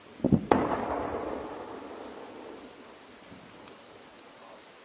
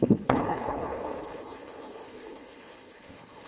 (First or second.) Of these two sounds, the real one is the first